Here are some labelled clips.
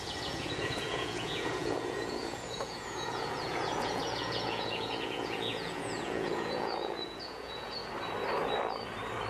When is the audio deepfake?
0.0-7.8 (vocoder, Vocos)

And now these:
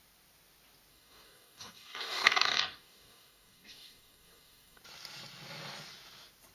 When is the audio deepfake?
0.9-4.8 (codec, DAC)